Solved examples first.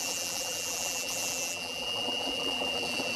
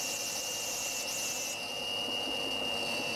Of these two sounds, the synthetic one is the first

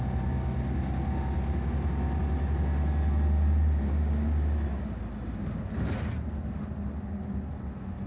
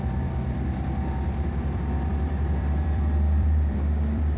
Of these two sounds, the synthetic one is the second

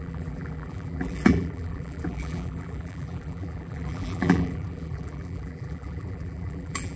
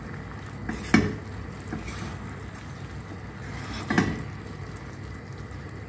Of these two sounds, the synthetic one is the first